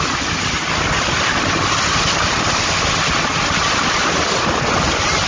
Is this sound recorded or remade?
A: recorded